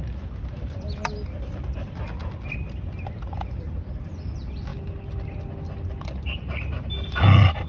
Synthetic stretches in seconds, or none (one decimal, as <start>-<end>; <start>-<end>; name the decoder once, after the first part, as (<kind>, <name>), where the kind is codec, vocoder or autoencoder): none